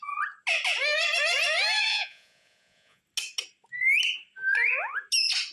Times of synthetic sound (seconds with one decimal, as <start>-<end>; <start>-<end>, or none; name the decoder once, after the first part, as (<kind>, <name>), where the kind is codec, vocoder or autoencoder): 1.9-3.0 (vocoder, Vocos)